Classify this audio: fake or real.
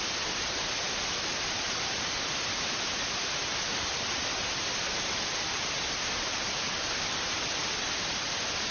real